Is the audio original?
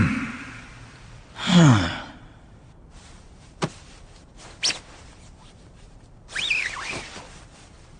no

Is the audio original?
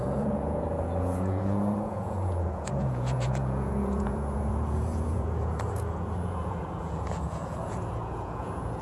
no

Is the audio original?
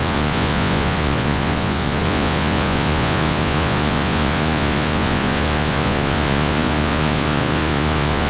no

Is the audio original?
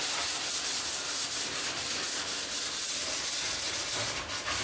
yes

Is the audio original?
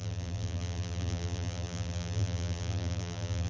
no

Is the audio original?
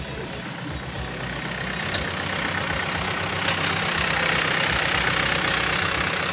yes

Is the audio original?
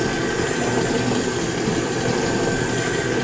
yes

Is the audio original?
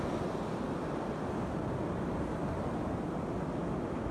yes